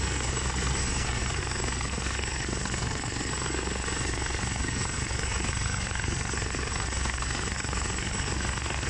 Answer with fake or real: fake